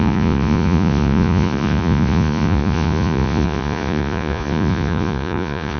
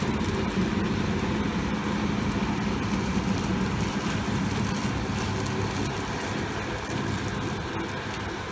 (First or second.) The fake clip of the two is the first